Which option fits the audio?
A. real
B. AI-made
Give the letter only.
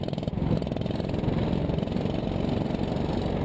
A